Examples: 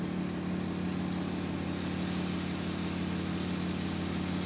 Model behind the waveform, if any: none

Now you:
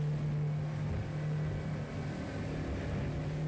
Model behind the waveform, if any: none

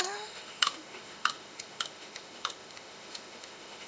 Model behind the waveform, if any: autoencoder, DAC-VAE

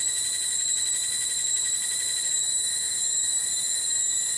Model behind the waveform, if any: none